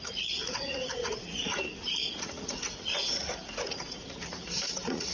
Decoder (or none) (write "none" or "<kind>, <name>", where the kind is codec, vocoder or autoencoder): vocoder, Vocos